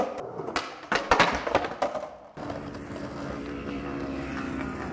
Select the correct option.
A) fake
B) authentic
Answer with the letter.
B